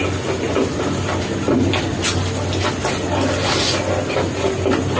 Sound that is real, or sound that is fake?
real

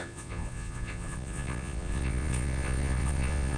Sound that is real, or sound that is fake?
fake